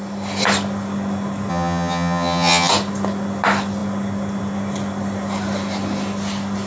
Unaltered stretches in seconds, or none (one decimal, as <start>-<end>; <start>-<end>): 0.0-1.5; 2.7-6.7